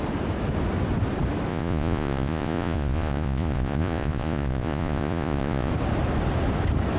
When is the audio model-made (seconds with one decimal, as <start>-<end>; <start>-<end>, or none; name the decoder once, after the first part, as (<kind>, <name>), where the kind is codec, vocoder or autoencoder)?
1.5-5.7 (vocoder, Vocos)